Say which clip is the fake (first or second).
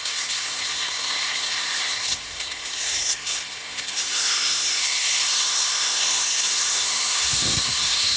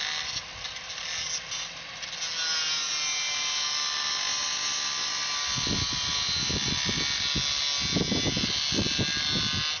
first